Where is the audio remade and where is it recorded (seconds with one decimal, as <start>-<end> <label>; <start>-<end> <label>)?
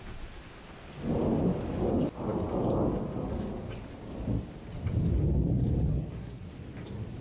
0.0-5.9 recorded; 5.9-6.5 remade; 6.5-7.2 recorded